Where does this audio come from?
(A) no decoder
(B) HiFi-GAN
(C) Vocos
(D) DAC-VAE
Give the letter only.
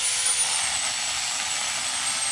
A